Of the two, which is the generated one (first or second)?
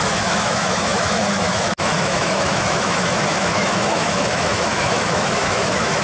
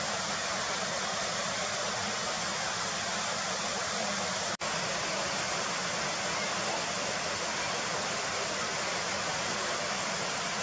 first